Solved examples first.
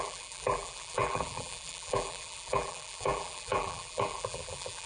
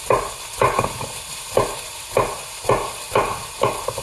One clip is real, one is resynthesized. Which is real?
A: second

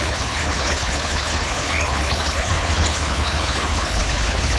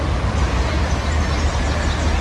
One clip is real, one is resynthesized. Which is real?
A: second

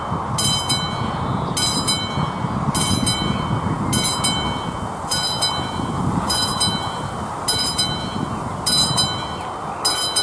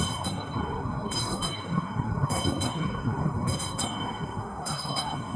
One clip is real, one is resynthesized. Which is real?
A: first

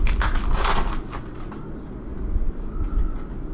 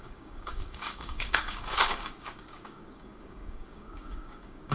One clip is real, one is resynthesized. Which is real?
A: first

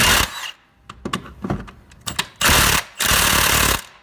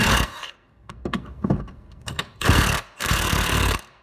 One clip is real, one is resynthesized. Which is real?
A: first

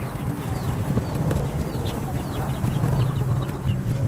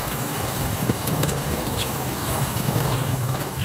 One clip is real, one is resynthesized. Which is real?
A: first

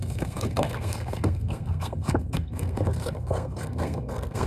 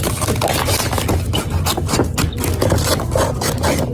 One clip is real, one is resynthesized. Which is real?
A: second